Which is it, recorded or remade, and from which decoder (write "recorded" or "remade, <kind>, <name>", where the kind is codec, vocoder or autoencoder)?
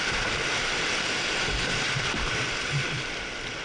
remade, vocoder, BigVGAN v2